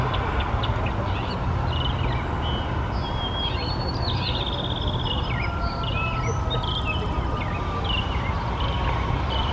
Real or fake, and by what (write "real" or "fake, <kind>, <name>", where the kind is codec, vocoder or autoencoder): real